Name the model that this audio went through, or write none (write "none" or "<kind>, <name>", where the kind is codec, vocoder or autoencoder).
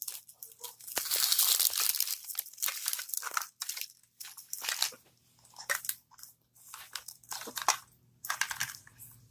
none